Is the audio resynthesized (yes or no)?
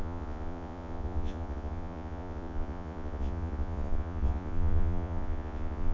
yes